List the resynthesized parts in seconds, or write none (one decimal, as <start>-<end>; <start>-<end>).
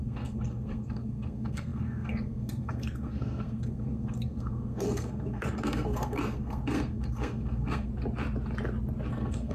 0.0-7.9; 9.1-9.5